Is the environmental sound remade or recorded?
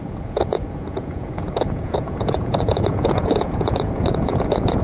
remade